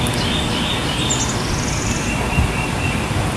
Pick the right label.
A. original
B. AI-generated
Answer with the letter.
B